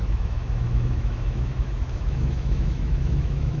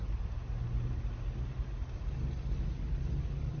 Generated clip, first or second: first